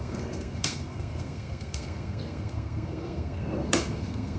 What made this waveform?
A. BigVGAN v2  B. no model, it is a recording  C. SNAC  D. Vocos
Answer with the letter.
C